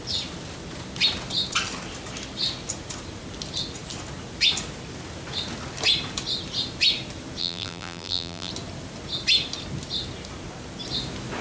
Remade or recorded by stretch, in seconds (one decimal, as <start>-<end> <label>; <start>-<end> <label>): 0.0-7.4 recorded; 7.4-8.5 remade; 8.5-11.4 recorded